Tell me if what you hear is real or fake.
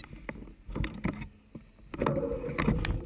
real